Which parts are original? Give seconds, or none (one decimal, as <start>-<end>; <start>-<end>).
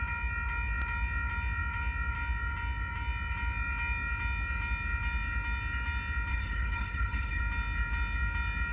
0.0-6.3; 7.4-8.7